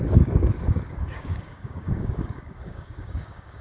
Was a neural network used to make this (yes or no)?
yes